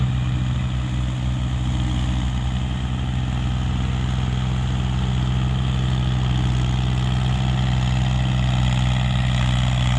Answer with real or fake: real